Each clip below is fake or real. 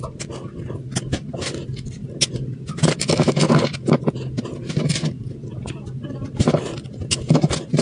real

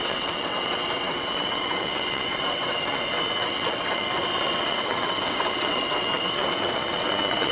fake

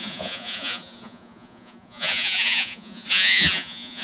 fake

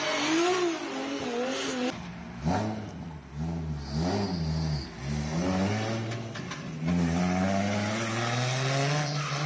real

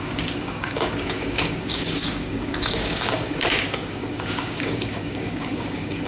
fake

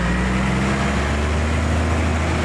real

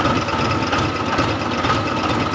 real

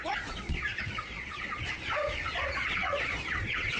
fake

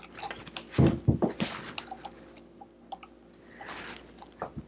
real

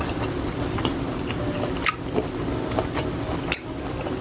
real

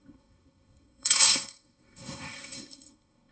fake